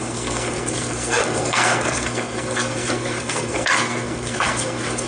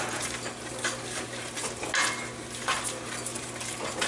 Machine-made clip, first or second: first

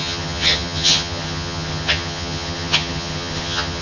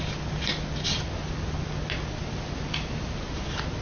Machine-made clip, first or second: first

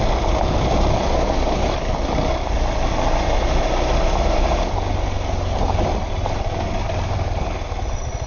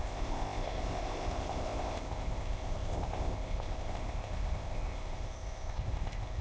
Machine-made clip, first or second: second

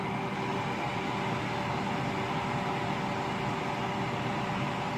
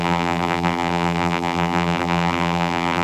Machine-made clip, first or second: second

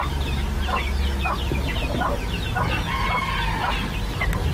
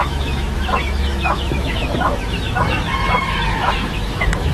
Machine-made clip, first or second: second